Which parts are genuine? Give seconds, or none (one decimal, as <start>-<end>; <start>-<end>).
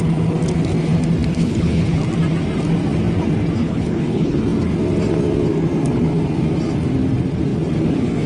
0.0-1.4; 2.0-3.6; 4.4-8.3